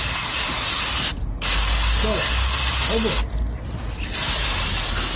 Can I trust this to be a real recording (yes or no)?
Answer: yes